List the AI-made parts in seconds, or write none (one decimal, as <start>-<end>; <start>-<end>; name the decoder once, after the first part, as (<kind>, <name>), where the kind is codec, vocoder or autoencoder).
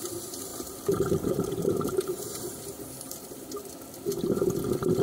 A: 0.5-3.5 (vocoder, BigVGAN v2)